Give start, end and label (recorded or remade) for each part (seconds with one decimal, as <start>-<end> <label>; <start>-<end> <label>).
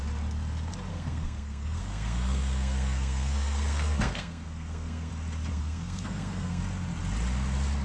0.0-0.9 recorded; 0.9-5.1 remade; 5.1-5.5 recorded; 5.5-6.6 remade; 6.6-7.8 recorded